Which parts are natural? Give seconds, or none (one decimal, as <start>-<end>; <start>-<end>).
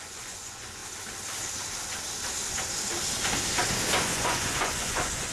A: 0.8-4.0